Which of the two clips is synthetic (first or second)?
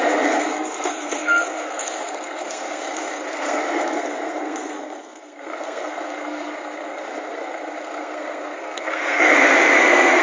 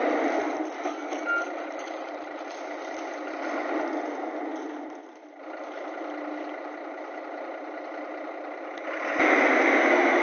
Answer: first